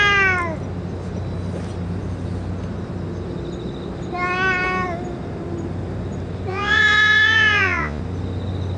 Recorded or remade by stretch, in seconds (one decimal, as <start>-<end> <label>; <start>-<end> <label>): 0.0-6.5 recorded; 6.5-8.0 remade; 8.0-8.8 recorded